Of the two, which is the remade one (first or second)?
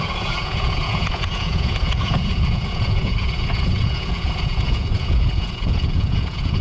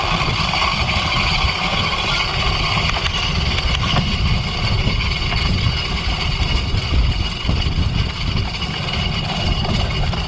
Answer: first